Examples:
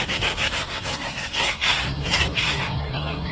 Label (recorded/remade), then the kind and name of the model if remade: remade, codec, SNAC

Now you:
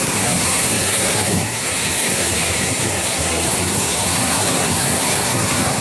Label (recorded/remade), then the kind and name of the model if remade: remade, codec, SNAC